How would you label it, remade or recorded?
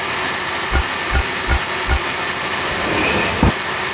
recorded